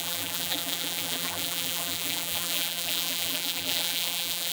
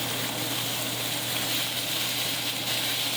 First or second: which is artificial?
first